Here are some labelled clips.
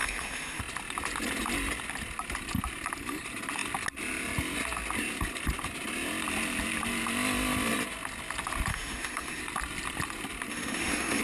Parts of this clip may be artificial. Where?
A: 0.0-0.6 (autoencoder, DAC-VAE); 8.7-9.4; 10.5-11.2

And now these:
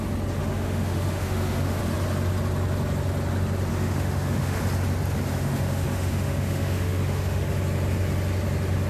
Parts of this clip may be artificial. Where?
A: 0.4-1.8 (autoencoder, DAC-VAE); 3.7-4.6; 5.3-7.4

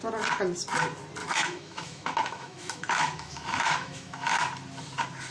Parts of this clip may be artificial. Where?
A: 1.2-4.4 (autoencoder, DAC-VAE)

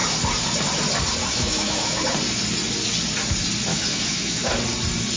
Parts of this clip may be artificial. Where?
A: 1.2-2.0 (autoencoder, DAC-VAE); 3.7-4.5

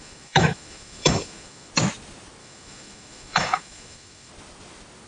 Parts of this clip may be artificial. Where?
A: 0.0-1.7 (autoencoder, DAC-VAE); 2.4-4.3

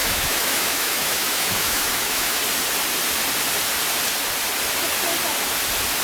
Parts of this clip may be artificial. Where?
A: 0.0-2.4 (autoencoder, DAC-VAE)

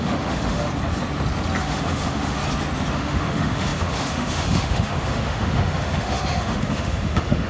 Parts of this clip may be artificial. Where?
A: 0.0-0.7 (autoencoder, DAC-VAE); 1.6-2.4; 2.9-7.5